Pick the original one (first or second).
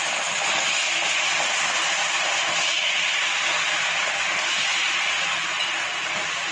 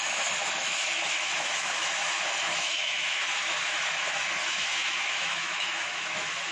first